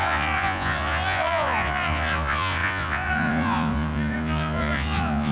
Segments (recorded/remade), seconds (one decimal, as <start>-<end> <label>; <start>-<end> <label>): 0.0-5.3 remade